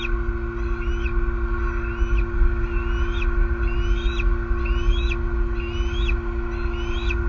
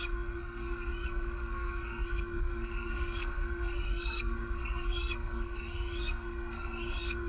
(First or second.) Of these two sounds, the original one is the first